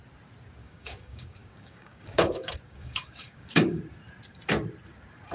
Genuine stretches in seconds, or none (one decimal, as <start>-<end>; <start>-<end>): 0.0-0.6; 3.8-5.3